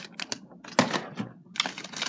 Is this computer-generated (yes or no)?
no